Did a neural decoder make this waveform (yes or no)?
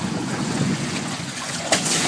yes